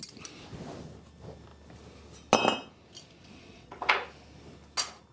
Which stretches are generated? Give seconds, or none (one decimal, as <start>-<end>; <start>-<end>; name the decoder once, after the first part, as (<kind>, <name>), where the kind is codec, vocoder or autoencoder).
3.2-3.9 (vocoder, WaveNeXt)